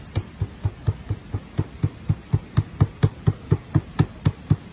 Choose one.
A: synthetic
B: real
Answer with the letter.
B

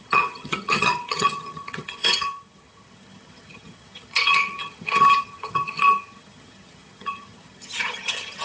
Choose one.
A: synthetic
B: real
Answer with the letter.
A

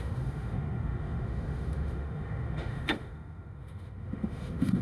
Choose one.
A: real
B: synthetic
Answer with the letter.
B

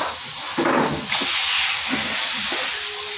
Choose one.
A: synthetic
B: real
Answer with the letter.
B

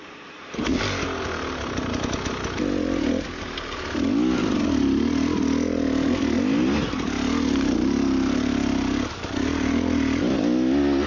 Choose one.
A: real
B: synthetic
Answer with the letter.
A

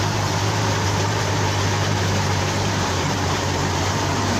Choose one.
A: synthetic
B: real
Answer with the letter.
A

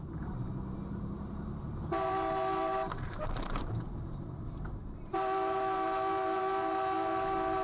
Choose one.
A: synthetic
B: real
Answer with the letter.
A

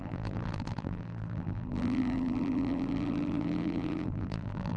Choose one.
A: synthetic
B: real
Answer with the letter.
A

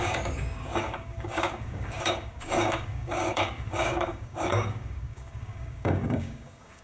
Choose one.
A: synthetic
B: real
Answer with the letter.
A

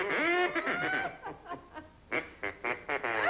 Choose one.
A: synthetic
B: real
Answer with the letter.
B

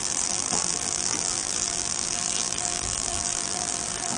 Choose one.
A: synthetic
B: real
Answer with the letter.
A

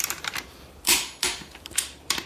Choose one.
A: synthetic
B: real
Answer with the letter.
A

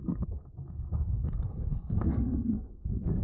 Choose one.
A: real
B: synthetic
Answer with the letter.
B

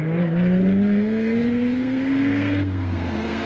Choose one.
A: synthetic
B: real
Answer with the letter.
A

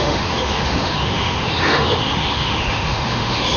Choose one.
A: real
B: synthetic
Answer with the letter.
B